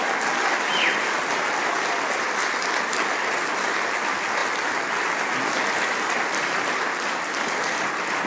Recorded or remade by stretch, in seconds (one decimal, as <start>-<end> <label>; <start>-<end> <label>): 0.0-8.3 recorded